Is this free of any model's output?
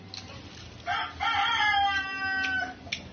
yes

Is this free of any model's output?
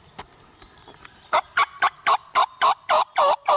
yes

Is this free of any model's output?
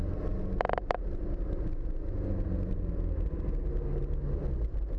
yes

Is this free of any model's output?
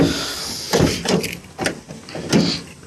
yes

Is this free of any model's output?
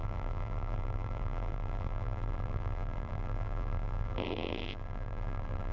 no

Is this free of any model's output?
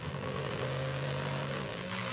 no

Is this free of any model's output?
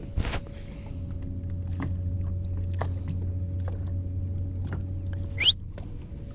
yes